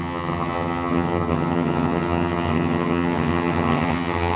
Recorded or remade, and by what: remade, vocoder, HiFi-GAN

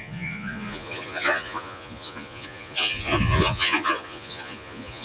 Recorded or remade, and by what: remade, vocoder, Vocos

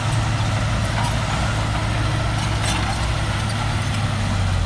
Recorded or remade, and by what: recorded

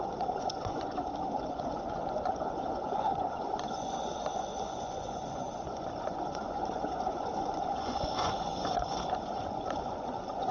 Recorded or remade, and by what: remade, vocoder, Vocos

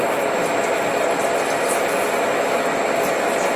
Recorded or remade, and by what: recorded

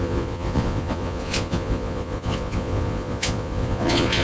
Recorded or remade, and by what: remade, vocoder, Vocos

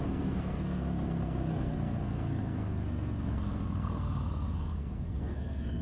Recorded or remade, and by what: remade, codec, SNAC